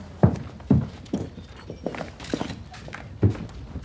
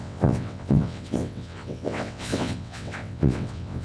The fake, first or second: second